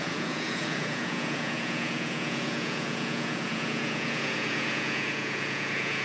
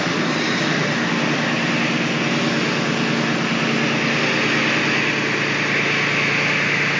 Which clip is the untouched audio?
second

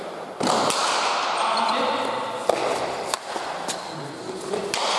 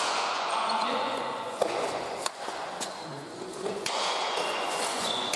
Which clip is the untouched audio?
first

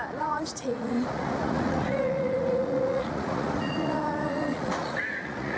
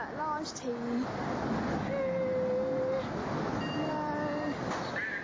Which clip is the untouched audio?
second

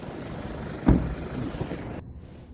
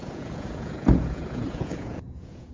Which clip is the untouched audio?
first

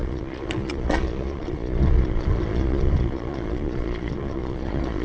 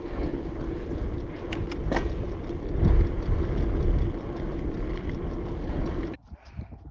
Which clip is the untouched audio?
second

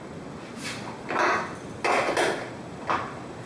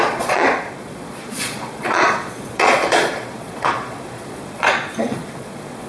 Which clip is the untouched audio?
first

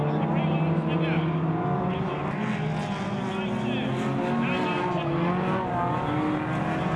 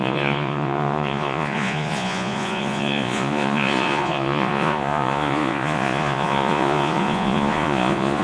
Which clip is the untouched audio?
first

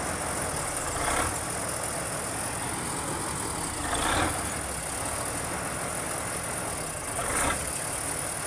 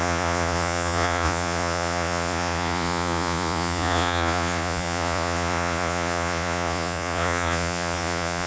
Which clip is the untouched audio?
first